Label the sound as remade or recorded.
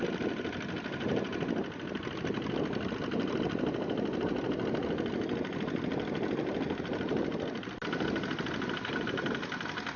recorded